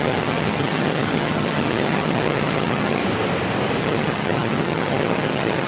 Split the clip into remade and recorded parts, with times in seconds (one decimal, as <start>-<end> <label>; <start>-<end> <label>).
0.0-3.0 remade; 3.0-3.8 recorded; 3.8-5.7 remade